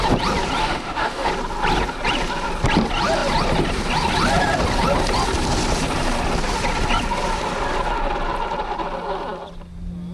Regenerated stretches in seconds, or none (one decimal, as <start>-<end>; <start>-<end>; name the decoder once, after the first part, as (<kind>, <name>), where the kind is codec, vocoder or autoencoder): 0.6-1.3 (autoencoder, DAC-VAE)